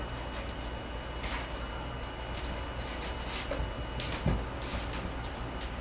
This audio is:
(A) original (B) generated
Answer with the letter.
A